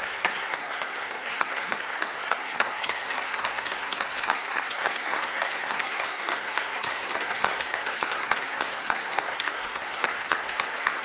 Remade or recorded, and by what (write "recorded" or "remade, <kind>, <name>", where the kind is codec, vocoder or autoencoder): remade, codec, SNAC